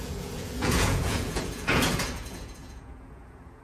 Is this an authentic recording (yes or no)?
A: no